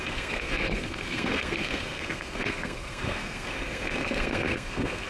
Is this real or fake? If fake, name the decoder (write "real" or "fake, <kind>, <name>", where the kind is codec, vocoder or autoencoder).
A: fake, codec, SNAC